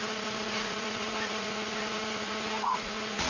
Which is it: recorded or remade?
remade